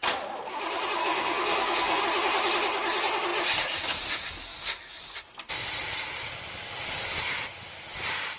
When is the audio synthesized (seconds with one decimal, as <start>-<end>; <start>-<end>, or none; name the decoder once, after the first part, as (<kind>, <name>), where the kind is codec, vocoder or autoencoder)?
1.0-2.0 (codec, SNAC)